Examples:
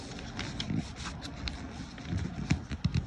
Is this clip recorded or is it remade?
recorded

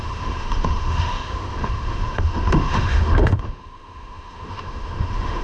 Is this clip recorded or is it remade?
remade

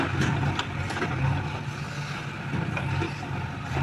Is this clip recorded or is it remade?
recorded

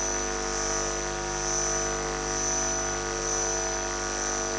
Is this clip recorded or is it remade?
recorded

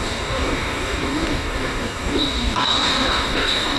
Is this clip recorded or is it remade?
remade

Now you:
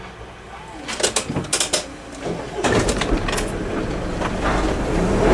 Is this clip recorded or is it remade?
recorded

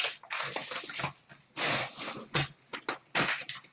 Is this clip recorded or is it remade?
recorded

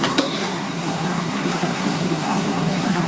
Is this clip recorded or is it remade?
remade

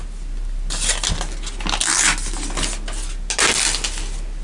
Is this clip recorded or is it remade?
recorded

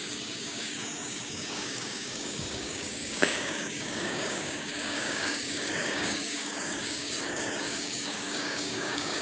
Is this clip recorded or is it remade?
remade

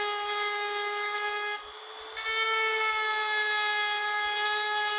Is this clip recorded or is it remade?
recorded